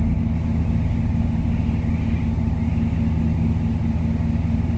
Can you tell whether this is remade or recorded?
recorded